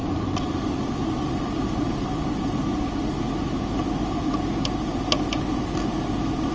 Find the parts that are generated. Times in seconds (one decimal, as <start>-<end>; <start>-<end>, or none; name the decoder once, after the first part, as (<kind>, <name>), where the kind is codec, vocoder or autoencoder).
none